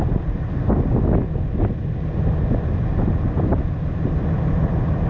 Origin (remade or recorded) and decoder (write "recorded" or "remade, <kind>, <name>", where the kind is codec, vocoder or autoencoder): recorded